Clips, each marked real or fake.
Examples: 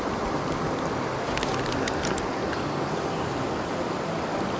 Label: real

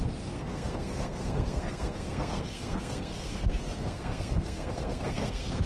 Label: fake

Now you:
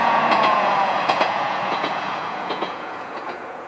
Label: fake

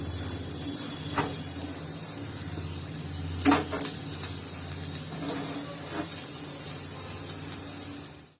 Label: real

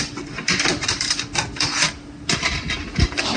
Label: real